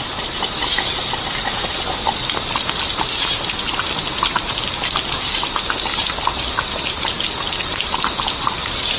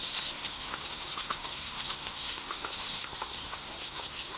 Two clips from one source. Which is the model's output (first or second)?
second